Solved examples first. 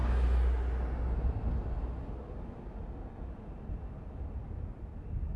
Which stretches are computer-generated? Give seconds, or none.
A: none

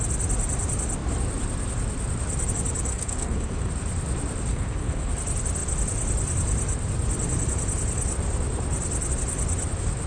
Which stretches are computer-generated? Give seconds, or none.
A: 2.9-3.7; 4.5-5.1

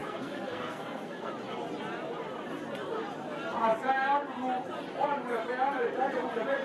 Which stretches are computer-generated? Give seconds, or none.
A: 0.0-1.3

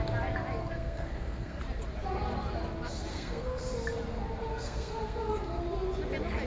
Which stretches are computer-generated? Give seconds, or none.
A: 0.6-1.6; 3.1-3.6; 4.5-5.6

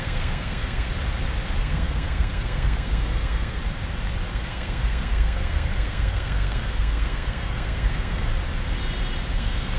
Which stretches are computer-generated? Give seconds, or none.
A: 0.0-0.9; 1.6-3.6; 4.3-8.3; 9.3-9.8

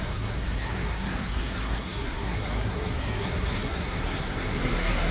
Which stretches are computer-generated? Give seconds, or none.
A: 0.0-5.1